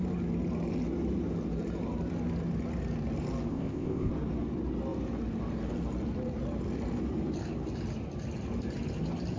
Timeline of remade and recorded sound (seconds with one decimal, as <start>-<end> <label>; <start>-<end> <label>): 0.0-3.5 recorded; 3.5-4.1 remade; 4.1-9.4 recorded